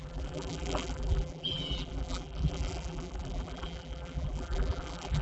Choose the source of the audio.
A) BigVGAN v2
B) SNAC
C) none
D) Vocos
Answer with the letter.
A